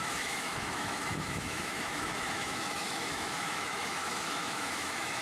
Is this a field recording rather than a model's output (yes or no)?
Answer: no